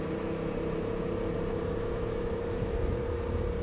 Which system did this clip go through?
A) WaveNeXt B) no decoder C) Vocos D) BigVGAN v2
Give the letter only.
D